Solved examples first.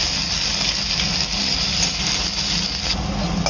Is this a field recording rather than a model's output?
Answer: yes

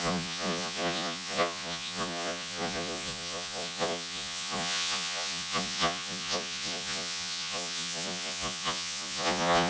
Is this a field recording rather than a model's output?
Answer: no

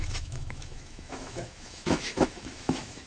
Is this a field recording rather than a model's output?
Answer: no